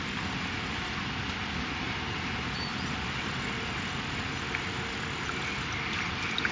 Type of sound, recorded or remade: recorded